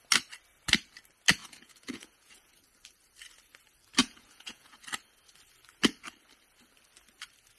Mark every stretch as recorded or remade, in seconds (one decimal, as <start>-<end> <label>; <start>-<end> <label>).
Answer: 0.0-1.4 recorded; 1.4-2.5 remade; 2.5-4.0 recorded; 4.0-4.8 remade; 4.8-7.6 recorded